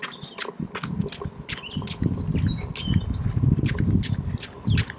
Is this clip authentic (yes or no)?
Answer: yes